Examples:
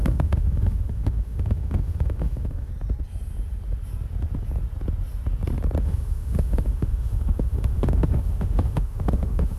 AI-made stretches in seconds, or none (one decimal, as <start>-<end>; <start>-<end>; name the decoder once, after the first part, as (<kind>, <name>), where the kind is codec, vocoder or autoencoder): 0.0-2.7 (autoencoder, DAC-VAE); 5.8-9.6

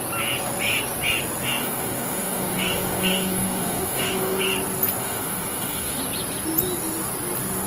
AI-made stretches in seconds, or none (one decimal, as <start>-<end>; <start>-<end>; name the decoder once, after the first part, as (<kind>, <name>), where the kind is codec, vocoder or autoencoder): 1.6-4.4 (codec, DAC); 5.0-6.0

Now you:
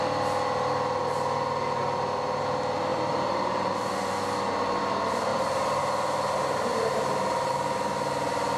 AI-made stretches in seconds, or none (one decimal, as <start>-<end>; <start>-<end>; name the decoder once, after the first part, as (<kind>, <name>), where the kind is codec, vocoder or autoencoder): 2.9-3.9 (vocoder, BigVGAN v2); 5.3-5.8

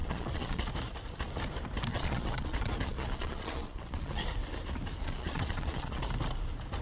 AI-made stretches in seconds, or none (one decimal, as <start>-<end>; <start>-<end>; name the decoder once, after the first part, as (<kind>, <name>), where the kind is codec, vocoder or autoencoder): 0.0-0.7 (vocoder, Vocos); 1.9-4.2; 5.0-6.0

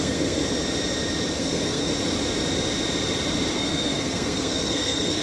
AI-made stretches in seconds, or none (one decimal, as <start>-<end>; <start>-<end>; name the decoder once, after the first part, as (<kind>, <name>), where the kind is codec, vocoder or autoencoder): 0.0-0.4 (codec, SNAC); 1.4-1.9; 3.5-5.2